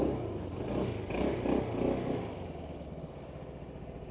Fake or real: real